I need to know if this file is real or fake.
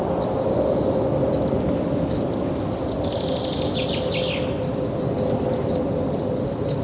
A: real